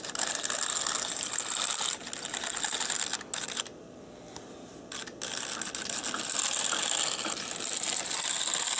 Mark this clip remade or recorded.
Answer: recorded